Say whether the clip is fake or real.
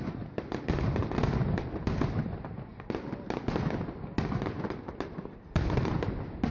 real